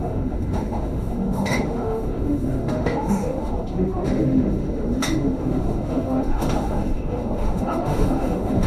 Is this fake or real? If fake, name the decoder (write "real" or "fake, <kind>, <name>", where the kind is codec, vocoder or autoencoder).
fake, autoencoder, DAC-VAE